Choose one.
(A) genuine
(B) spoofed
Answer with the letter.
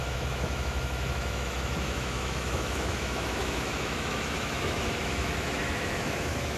B